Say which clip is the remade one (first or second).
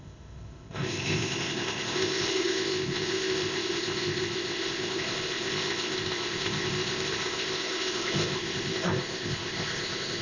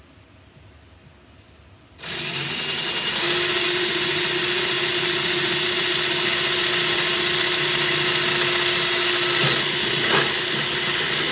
first